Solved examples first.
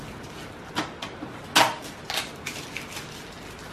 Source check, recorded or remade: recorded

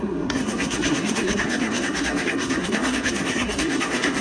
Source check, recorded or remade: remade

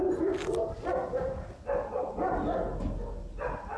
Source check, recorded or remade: recorded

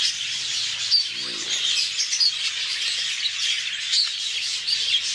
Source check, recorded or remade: recorded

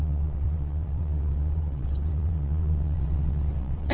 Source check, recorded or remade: remade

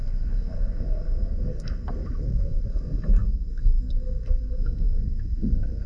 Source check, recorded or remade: remade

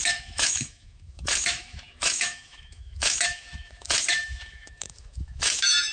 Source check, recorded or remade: remade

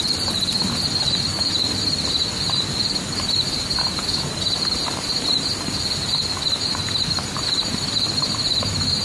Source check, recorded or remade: recorded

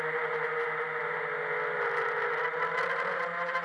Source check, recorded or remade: recorded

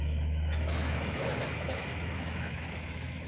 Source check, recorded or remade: remade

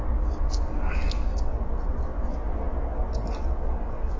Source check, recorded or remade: recorded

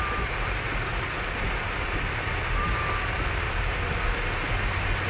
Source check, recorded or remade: recorded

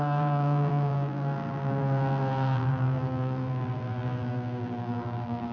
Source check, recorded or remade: remade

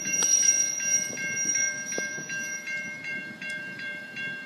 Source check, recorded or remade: remade